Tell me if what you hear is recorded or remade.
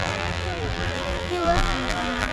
remade